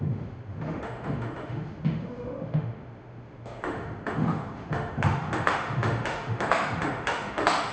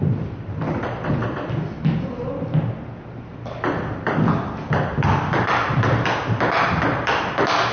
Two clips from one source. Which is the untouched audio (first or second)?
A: second